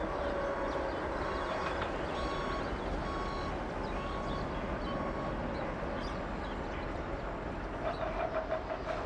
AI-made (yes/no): no